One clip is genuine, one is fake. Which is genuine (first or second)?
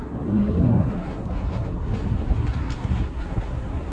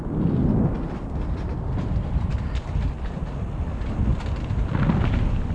second